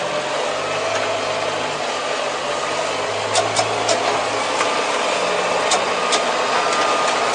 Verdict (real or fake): real